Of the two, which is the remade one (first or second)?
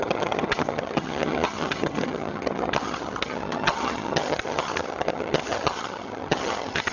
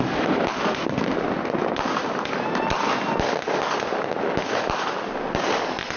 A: first